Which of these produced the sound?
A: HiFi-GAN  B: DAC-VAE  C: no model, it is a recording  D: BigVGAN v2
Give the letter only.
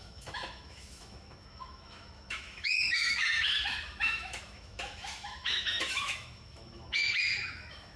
B